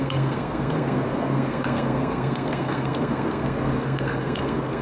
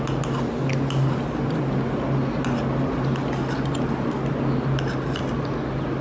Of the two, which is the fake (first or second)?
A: first